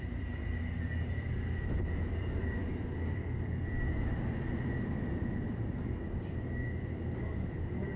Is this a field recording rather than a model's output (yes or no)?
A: no